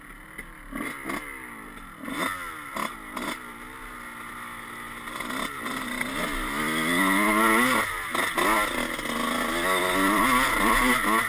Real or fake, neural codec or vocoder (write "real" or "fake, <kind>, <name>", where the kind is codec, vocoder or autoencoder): real